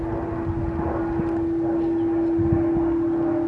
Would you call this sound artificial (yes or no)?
no